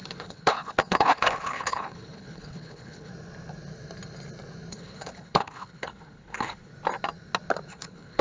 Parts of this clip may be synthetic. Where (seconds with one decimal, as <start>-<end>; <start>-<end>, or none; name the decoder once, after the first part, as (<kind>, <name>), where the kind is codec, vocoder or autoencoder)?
0.0-3.1 (codec, HILCodec); 4.7-6.7; 7.7-8.2